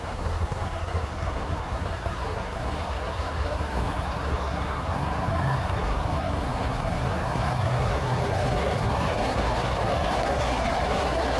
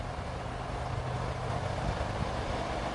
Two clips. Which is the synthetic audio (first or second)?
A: first